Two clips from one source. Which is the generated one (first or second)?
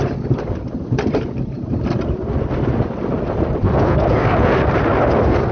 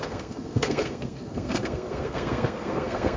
second